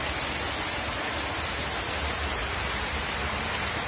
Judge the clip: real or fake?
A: real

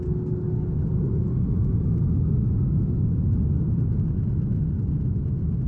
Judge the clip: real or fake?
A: real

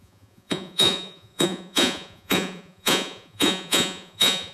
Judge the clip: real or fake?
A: fake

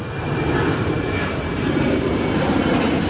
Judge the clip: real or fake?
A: fake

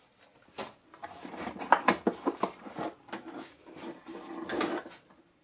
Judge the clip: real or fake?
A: real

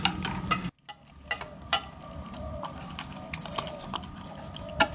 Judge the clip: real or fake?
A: real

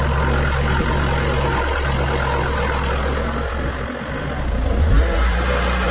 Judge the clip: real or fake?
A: real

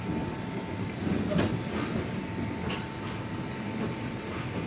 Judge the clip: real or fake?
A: real